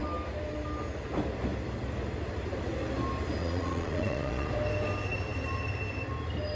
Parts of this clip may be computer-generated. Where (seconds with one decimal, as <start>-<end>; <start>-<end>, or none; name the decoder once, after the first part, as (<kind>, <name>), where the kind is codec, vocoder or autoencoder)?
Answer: 3.4-4.5 (vocoder, Vocos)

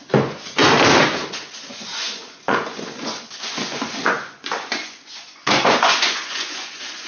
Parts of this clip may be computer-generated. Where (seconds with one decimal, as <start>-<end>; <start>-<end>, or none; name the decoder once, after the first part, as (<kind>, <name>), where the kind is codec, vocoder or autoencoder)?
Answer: 0.0-0.6 (vocoder, Vocos); 1.3-7.1

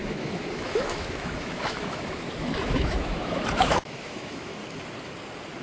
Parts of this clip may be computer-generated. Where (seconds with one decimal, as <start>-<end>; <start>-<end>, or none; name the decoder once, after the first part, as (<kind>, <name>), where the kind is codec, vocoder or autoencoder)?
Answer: 0.0-4.6 (autoencoder, DAC-VAE)

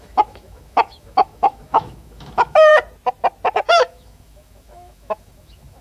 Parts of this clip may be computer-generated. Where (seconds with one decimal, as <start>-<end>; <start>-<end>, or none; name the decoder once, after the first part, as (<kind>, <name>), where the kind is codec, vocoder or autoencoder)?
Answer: 0.0-2.7 (autoencoder, DAC-VAE); 3.7-5.8